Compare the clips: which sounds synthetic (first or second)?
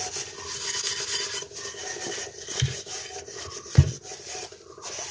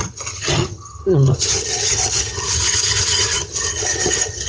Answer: second